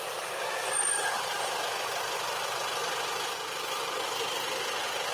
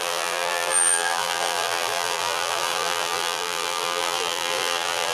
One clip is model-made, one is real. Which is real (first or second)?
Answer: first